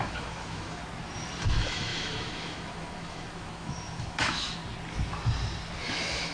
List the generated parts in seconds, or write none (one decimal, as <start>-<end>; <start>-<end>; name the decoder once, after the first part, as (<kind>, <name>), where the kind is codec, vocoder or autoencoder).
0.0-0.8 (autoencoder, DAC-VAE); 1.4-4.6; 5.8-6.3